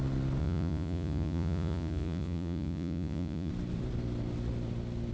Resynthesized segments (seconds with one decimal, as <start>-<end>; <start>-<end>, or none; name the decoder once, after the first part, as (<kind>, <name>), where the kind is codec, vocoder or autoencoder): 0.4-3.5 (vocoder, Vocos)